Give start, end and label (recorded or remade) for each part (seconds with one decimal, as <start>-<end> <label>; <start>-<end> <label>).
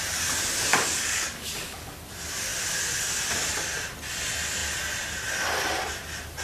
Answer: 0.0-0.7 recorded; 0.7-1.9 remade; 1.9-6.4 recorded